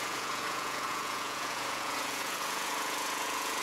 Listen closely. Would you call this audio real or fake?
fake